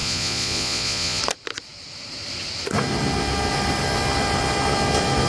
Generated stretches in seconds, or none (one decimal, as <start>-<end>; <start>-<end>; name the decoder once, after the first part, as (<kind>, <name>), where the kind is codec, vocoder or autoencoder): 0.0-1.2 (vocoder, Vocos)